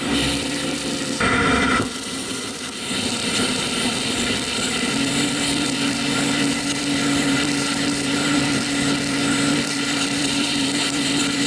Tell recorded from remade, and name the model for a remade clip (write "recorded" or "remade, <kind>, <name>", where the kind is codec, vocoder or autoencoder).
remade, vocoder, BigVGAN v2